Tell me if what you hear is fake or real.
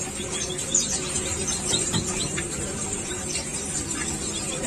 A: real